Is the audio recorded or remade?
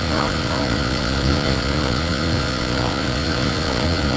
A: remade